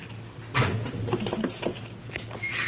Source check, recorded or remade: recorded